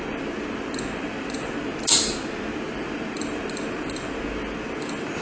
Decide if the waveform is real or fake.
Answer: real